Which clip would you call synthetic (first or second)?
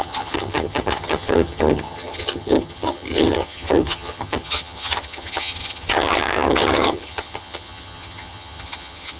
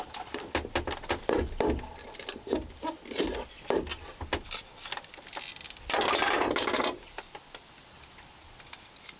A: first